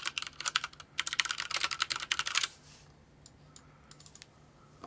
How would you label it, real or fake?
real